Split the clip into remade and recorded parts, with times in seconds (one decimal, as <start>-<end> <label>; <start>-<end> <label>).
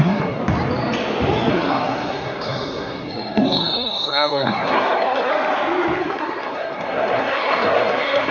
0.0-0.4 remade; 0.4-1.5 recorded; 1.5-5.3 remade; 5.3-6.0 recorded; 6.0-8.3 remade